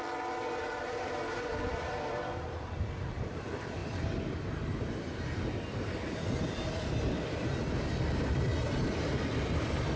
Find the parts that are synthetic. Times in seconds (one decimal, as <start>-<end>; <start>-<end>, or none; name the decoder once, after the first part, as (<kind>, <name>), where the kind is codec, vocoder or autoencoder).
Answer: 0.0-3.8 (vocoder, BigVGAN v2); 6.5-8.5; 9.1-10.0